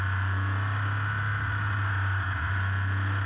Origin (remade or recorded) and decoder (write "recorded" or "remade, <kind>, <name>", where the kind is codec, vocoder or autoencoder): recorded